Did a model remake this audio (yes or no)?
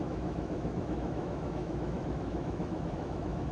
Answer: yes